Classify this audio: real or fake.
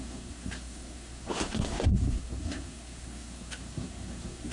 fake